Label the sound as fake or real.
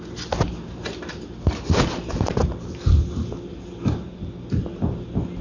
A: real